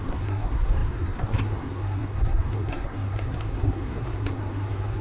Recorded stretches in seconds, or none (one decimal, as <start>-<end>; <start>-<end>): none